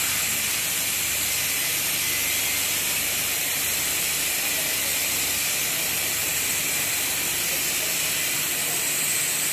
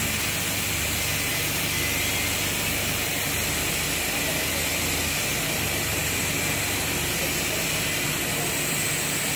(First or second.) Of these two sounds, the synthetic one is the first